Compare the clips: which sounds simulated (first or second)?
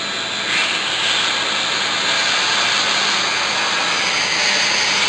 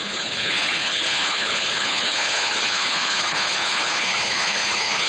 second